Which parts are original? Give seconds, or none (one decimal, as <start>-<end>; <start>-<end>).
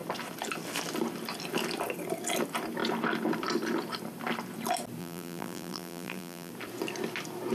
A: 0.0-5.0; 6.5-7.5